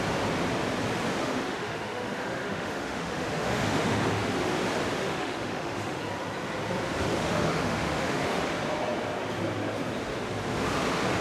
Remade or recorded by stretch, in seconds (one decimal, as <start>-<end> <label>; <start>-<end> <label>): 0.0-1.2 recorded; 1.2-4.3 remade; 4.3-5.0 recorded; 5.0-6.0 remade; 6.0-7.2 recorded; 7.2-8.4 remade; 8.4-11.2 recorded